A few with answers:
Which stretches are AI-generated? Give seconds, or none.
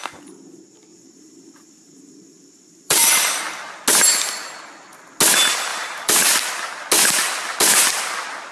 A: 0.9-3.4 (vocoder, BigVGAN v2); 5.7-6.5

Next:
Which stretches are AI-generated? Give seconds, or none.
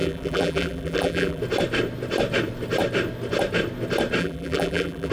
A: 0.0-1.4 (vocoder, BigVGAN v2); 4.2-5.1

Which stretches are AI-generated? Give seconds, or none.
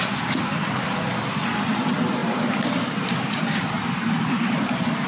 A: 2.2-5.1 (vocoder, BigVGAN v2)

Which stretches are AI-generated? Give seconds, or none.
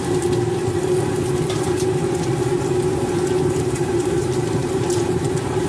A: 3.4-5.7 (vocoder, BigVGAN v2)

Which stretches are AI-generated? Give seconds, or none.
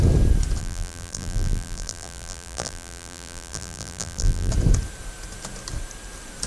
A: 0.6-4.5 (vocoder, BigVGAN v2)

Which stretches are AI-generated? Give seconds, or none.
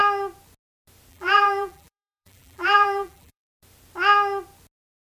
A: 1.1-3.5 (vocoder, BigVGAN v2)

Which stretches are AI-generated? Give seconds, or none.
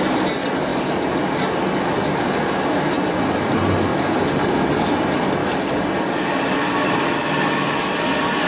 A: 0.7-1.4 (vocoder, BigVGAN v2); 5.4-5.9